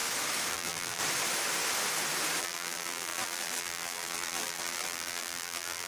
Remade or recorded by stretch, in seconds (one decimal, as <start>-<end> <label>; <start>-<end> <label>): 0.0-0.5 recorded; 0.5-1.0 remade; 1.0-2.4 recorded; 2.4-5.9 remade